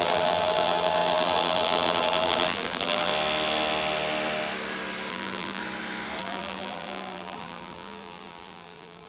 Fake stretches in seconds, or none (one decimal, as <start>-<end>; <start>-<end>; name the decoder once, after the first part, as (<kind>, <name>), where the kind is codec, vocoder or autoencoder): 0.0-3.1 (vocoder, BigVGAN v2); 5.1-5.6; 6.2-9.1